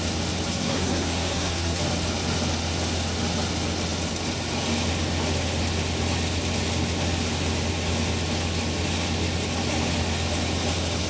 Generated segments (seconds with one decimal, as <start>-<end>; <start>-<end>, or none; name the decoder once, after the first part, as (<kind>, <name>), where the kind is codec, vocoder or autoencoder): 0.5-1.8 (codec, SNAC)